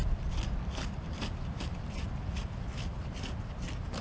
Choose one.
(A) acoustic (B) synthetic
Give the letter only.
A